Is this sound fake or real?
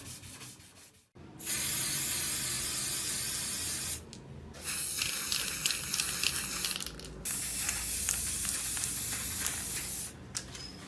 real